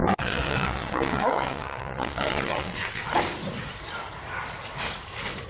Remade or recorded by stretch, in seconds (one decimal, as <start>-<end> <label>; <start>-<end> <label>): 0.0-3.1 remade; 3.1-5.5 recorded